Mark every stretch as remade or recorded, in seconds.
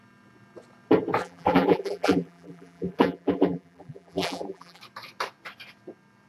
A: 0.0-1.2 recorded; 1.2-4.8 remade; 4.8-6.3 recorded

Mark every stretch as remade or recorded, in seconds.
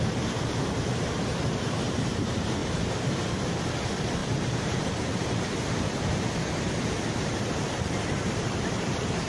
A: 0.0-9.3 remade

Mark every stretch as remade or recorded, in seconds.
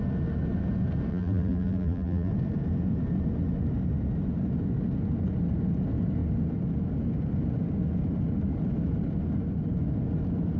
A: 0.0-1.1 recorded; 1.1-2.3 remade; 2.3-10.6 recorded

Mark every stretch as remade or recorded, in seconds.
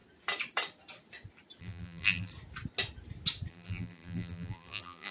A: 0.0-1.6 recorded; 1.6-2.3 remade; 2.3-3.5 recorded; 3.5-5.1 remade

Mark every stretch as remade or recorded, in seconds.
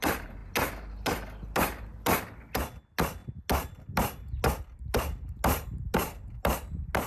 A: 0.0-7.1 recorded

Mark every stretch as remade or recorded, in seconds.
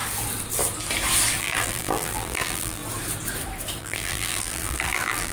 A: 0.0-1.4 recorded; 1.4-2.8 remade; 2.8-3.8 recorded; 3.8-5.3 remade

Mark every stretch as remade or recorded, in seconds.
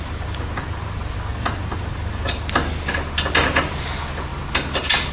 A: 0.0-1.3 recorded; 1.3-2.2 remade; 2.2-5.1 recorded